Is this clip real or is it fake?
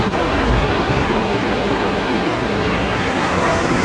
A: fake